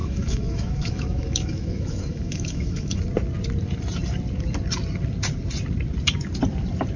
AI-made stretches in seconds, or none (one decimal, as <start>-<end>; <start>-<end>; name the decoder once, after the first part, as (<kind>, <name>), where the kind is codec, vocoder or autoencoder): 0.0-3.0 (autoencoder, DAC-VAE)